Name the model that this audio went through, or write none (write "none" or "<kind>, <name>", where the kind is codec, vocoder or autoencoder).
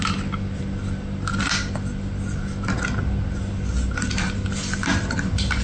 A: none